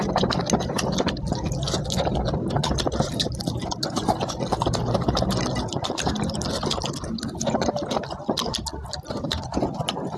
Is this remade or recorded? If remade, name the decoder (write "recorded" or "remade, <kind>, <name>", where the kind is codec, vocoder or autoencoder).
recorded